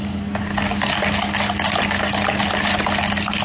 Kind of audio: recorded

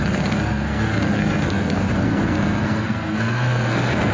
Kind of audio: remade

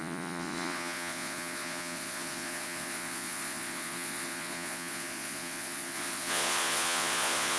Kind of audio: remade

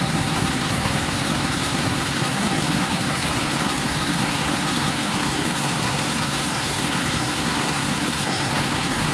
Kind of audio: remade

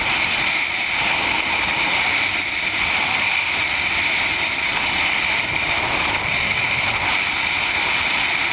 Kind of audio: recorded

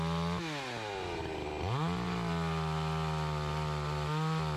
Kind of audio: recorded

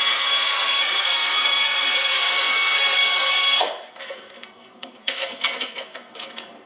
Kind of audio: remade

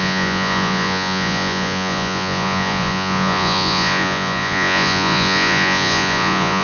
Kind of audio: remade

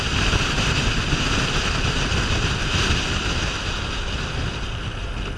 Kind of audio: recorded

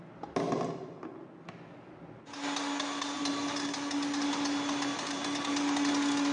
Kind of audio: recorded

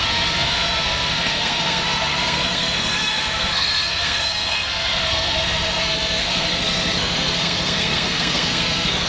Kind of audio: remade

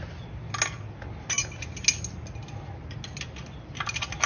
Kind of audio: recorded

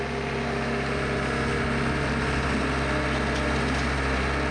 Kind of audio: recorded